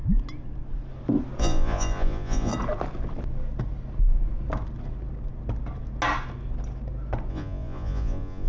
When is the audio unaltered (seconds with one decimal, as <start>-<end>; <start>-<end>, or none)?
0.0-1.4; 2.5-7.3